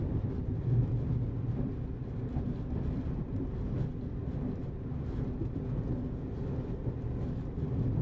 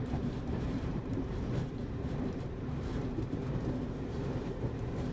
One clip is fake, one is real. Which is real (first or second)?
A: first